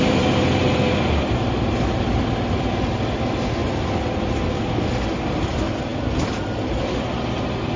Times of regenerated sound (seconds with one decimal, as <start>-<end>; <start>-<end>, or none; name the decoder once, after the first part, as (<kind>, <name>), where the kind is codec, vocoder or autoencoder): none